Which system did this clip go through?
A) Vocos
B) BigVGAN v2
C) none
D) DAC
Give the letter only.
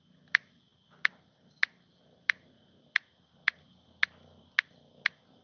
C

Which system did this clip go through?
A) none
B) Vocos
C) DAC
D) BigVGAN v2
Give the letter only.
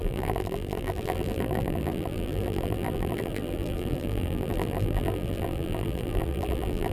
D